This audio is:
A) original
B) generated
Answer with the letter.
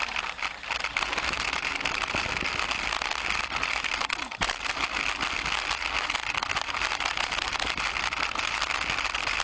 A